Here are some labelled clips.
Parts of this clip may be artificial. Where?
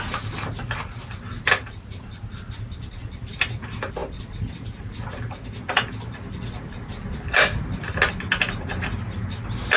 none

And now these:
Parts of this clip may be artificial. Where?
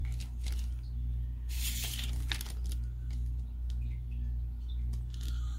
none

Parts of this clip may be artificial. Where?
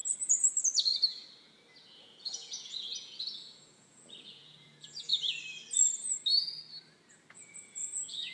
2.0-5.1; 7.3-8.3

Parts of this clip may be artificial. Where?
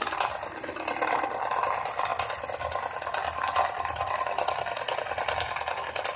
none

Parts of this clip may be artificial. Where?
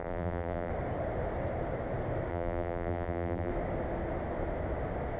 0.0-0.7; 2.3-3.5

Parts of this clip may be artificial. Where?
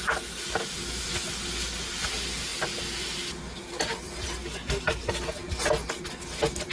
4.4-5.1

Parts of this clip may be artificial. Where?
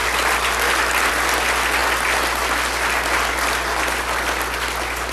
none